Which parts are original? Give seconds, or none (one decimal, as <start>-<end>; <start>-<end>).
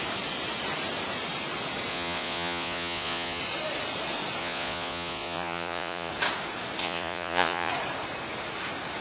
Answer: 0.0-1.9; 3.4-4.4; 6.1-6.8; 7.7-9.0